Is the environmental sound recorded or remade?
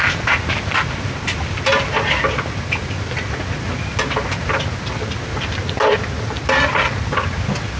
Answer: recorded